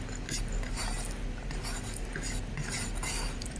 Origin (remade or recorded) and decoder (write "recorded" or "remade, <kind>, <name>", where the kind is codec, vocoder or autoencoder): recorded